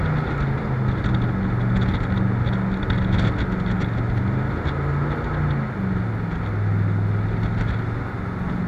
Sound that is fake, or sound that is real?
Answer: real